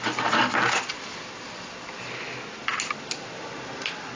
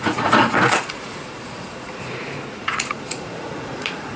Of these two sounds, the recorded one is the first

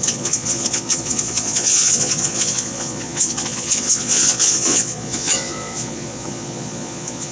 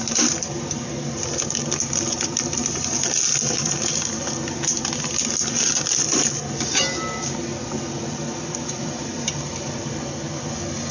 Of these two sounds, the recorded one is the second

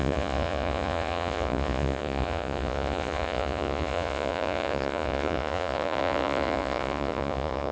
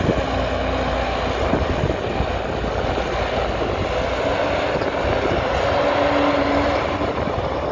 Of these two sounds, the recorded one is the second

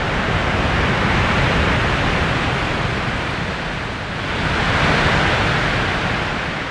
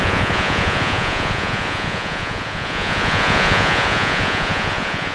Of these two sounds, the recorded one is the first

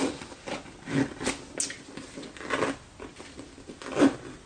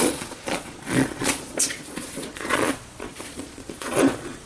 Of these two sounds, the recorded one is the first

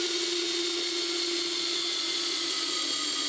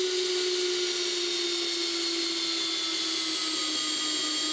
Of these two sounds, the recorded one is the second